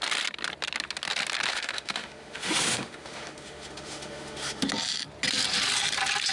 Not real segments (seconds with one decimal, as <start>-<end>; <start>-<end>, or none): 1.5-4.7

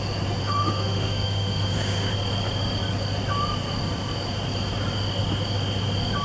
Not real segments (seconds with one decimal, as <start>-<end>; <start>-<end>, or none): 0.4-2.1

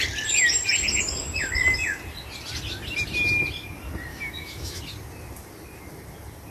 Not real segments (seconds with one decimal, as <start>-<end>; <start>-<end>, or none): 4.1-4.8

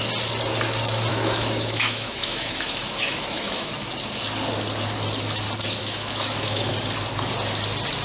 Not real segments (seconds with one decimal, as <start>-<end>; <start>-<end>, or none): 1.1-3.7; 5.8-6.7

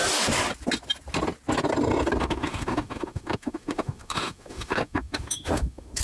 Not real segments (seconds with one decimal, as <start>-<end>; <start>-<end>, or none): 2.2-6.0

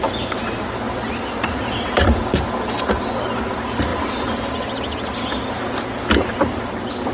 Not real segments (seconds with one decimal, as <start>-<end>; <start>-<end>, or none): none

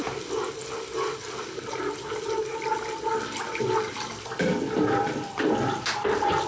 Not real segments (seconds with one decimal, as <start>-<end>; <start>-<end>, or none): none

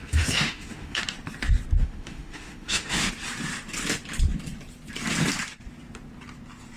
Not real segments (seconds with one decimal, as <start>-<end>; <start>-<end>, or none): 0.0-1.0; 1.8-3.1